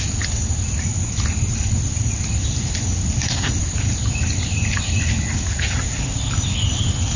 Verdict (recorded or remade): recorded